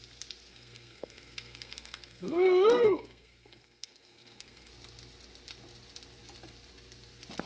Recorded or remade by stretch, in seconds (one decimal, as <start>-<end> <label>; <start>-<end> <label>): 0.0-0.5 recorded; 0.5-4.7 remade; 4.7-7.5 recorded